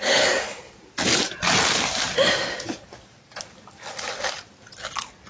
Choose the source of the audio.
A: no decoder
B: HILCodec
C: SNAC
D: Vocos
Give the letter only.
A